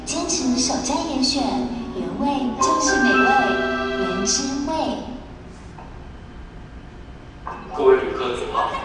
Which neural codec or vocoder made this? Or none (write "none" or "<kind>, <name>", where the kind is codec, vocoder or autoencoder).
none